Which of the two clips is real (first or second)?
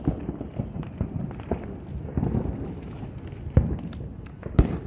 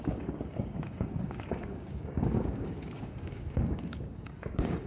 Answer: first